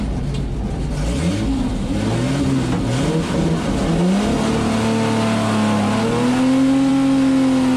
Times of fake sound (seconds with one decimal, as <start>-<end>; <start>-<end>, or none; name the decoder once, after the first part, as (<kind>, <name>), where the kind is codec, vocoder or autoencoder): none